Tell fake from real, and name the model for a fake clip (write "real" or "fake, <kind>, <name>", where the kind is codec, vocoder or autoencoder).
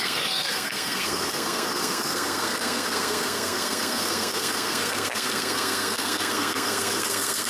fake, codec, SNAC